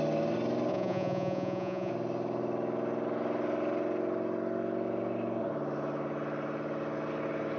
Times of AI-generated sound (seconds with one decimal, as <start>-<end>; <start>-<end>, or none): 0.7-1.9